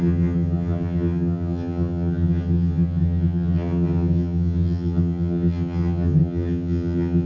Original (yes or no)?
no